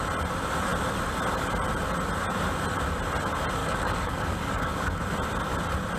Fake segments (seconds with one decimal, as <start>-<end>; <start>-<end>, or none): 3.6-5.0